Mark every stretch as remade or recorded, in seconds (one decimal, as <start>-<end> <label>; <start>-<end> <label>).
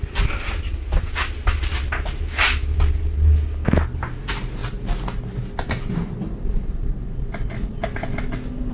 0.0-8.7 recorded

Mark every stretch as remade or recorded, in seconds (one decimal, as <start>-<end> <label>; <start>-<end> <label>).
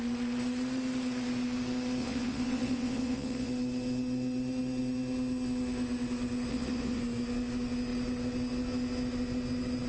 0.0-2.0 recorded; 2.0-3.5 remade; 3.5-6.5 recorded; 6.5-7.0 remade; 7.0-9.9 recorded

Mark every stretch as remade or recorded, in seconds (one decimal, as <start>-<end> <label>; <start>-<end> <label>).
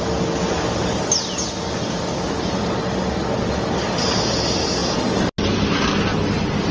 0.0-6.7 recorded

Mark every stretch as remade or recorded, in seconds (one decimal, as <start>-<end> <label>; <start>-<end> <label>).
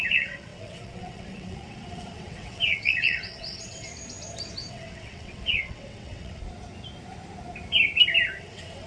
0.0-3.9 remade; 3.9-4.7 recorded; 4.7-6.4 remade; 6.4-8.4 recorded; 8.4-8.9 remade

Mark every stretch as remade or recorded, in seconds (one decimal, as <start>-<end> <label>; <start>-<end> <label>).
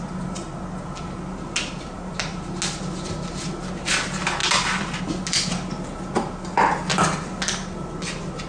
0.0-8.5 recorded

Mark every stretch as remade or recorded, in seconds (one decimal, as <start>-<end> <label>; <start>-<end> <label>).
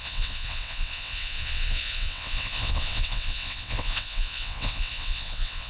0.0-5.7 remade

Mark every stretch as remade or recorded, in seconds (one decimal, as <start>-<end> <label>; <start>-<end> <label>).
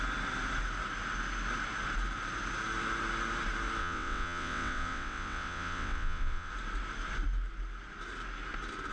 0.0-3.8 recorded; 3.8-6.5 remade; 6.5-8.9 recorded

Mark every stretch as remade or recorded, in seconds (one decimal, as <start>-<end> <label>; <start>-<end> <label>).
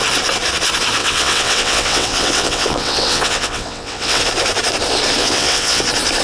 0.0-1.0 recorded; 1.0-4.2 remade; 4.2-5.2 recorded; 5.2-5.8 remade; 5.8-6.2 recorded